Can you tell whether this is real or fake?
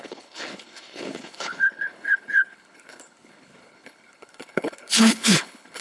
fake